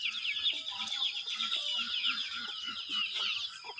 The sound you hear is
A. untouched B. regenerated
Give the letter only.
A